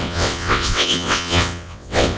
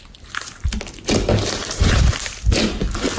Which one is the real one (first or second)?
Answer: second